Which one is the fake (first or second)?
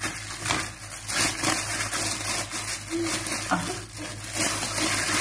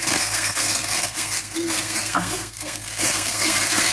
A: second